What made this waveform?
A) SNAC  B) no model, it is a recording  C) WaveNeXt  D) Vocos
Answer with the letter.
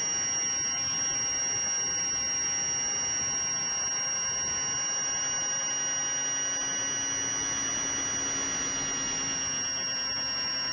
B